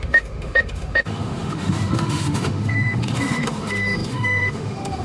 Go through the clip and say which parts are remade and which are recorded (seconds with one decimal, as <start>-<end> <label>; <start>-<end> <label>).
0.0-5.0 remade